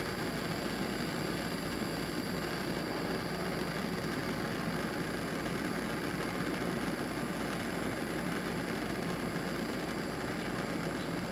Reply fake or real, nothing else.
real